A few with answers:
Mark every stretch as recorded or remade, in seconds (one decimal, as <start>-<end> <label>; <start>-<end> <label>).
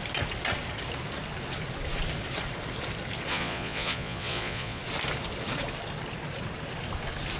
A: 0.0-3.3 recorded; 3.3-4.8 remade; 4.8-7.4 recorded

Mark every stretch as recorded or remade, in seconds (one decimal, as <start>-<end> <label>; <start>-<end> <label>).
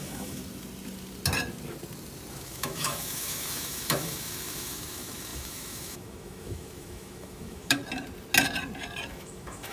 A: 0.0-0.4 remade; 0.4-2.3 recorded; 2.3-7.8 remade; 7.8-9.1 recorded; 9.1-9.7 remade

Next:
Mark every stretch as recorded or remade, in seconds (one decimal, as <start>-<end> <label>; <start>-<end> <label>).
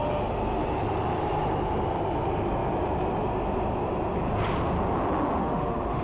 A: 0.0-5.4 recorded; 5.4-6.0 remade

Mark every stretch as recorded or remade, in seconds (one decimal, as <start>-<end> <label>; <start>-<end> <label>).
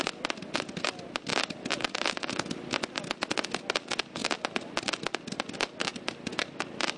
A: 0.0-7.0 recorded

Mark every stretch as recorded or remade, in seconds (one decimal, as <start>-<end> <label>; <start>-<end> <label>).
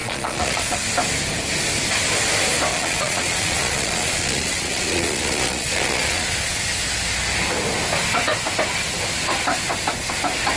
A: 0.0-0.8 remade; 0.8-2.7 recorded; 2.7-6.6 remade; 6.6-10.6 recorded